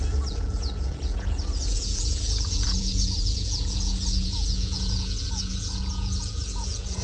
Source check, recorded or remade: remade